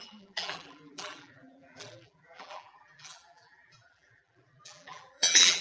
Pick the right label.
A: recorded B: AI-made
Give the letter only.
B